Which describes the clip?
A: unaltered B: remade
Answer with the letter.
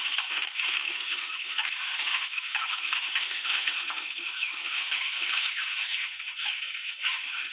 B